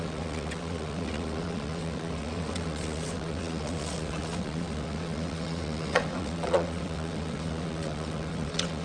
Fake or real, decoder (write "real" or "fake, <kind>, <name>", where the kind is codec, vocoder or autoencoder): fake, vocoder, WaveNeXt